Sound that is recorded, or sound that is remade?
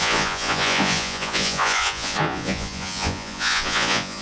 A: remade